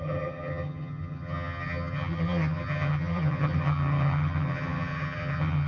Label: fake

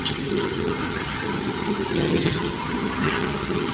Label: fake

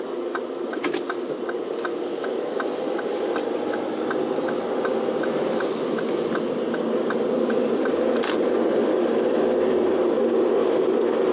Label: real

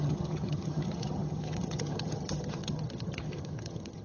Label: fake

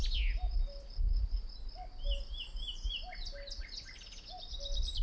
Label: real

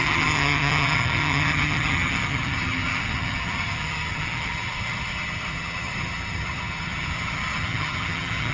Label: fake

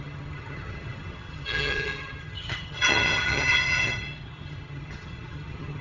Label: fake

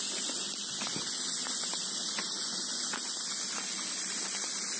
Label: real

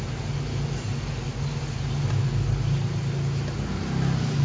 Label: real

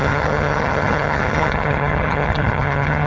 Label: fake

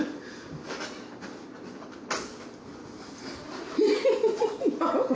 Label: real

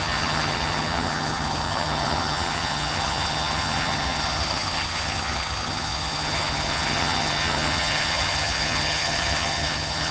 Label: fake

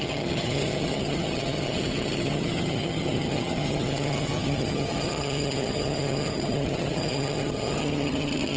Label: fake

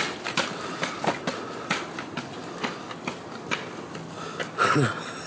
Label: real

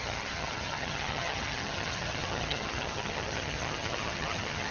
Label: fake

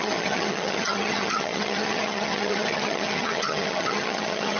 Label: fake